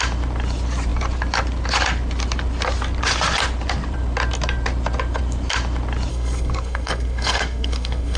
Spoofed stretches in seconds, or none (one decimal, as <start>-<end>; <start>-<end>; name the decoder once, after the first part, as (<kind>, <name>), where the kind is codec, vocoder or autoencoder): 6.1-8.2 (codec, SNAC)